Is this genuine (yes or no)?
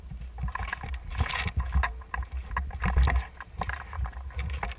yes